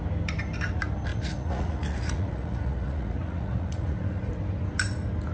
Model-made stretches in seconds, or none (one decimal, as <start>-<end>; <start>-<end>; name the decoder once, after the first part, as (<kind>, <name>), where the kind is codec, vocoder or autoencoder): 1.1-4.3 (vocoder, Vocos)